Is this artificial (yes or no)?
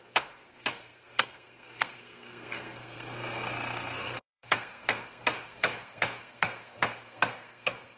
yes